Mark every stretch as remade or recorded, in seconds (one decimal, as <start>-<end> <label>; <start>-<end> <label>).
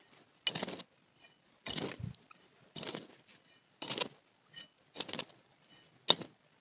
0.0-6.6 recorded